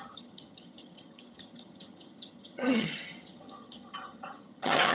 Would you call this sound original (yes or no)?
no